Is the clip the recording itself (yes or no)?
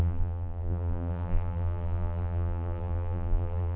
no